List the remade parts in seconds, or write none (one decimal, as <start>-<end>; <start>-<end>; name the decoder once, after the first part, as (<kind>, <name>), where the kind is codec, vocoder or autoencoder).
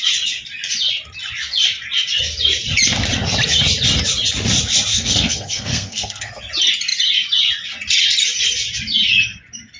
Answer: 4.9-6.4 (codec, SNAC)